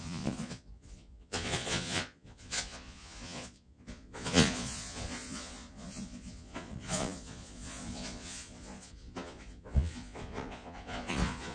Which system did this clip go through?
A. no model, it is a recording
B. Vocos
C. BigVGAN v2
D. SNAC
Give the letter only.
B